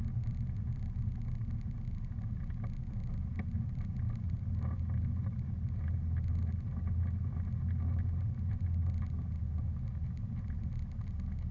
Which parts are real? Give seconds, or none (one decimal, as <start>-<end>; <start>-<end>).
0.0-11.5